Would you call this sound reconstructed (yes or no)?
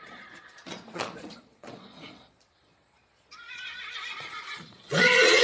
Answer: yes